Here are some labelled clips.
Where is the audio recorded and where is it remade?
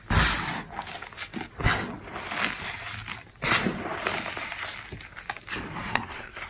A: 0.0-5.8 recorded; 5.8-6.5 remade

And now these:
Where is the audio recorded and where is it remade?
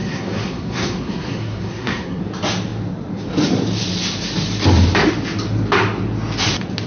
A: 0.0-2.2 remade; 2.2-6.9 recorded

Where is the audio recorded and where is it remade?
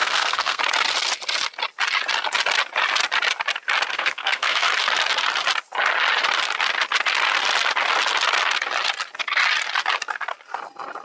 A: 0.0-0.6 remade; 0.6-3.9 recorded; 3.9-4.7 remade; 4.7-11.0 recorded